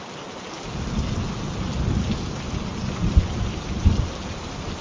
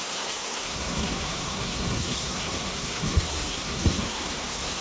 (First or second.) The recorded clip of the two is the first